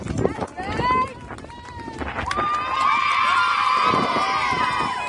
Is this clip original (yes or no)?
yes